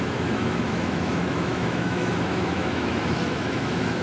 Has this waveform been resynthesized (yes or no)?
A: yes